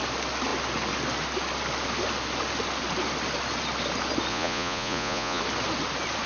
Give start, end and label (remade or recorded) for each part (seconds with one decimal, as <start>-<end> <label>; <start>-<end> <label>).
0.0-4.3 recorded; 4.3-5.4 remade; 5.4-6.3 recorded

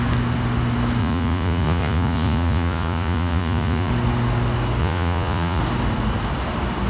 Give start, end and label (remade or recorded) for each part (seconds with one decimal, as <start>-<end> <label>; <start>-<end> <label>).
0.0-1.0 recorded; 1.0-3.9 remade; 3.9-4.8 recorded; 4.8-5.6 remade; 5.6-6.9 recorded

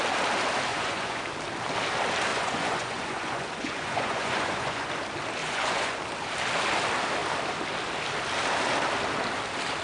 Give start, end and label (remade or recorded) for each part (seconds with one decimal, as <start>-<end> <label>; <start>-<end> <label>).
0.0-0.7 recorded; 0.7-1.2 remade; 1.2-2.3 recorded; 2.3-4.9 remade; 4.9-5.4 recorded; 5.4-6.0 remade; 6.0-9.8 recorded